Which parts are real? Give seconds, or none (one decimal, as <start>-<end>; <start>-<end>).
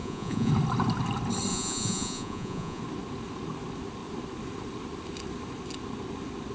0.5-1.5; 2.8-6.5